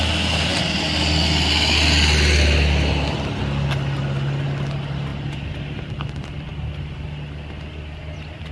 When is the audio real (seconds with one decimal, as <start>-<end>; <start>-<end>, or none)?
0.0-8.5